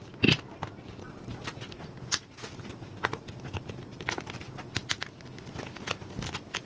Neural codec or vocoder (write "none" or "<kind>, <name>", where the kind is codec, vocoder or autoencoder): none